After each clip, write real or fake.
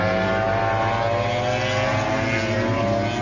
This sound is real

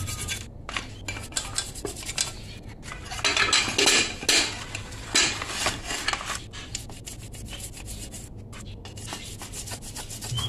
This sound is real